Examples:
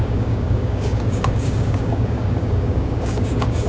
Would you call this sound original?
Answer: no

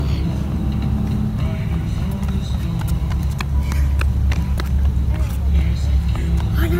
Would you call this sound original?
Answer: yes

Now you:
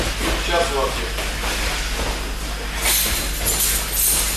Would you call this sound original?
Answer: yes